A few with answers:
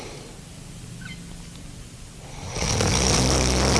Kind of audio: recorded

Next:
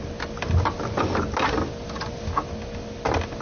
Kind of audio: recorded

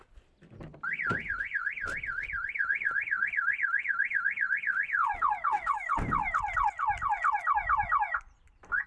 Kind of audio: recorded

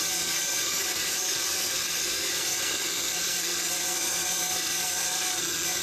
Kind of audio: remade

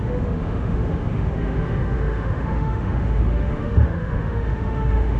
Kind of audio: remade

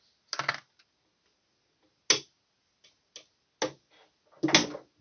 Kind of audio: recorded